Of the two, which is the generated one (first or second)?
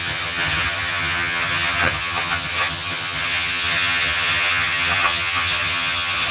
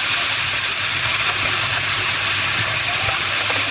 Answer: first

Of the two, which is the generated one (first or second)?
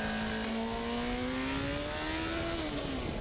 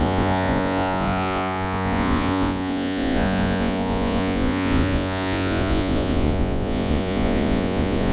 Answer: second